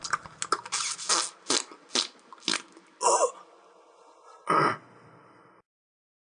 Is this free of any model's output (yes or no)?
yes